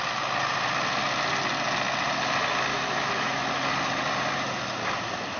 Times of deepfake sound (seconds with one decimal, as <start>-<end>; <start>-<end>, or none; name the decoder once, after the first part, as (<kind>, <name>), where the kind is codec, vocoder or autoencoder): 2.7-3.4 (autoencoder, DAC-VAE)